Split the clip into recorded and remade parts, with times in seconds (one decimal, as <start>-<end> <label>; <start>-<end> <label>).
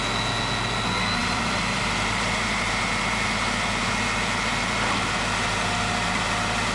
0.0-1.2 recorded; 1.2-2.8 remade; 2.8-6.7 recorded